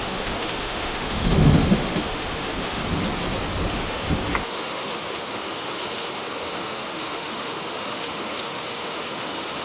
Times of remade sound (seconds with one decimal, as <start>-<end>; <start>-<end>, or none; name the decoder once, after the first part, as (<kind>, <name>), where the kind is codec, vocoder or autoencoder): 0.0-2.8 (autoencoder, DAC-VAE); 3.7-9.6